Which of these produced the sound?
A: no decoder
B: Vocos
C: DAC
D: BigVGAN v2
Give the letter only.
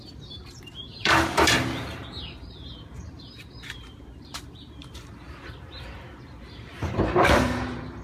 D